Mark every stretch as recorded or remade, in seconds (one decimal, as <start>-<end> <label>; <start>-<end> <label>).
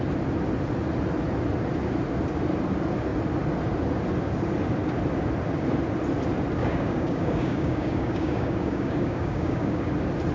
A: 0.0-6.6 recorded; 6.6-9.9 remade; 9.9-10.3 recorded